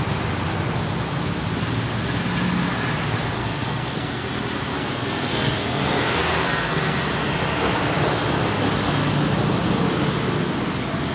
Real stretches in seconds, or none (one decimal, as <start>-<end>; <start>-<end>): 0.0-3.4; 4.3-4.7; 7.0-11.1